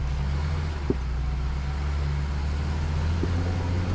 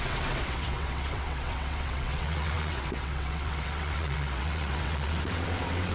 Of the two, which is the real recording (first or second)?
first